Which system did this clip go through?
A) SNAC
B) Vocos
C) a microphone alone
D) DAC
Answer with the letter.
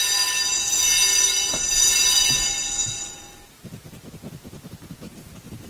C